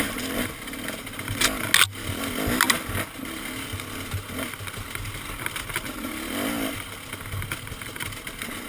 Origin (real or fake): real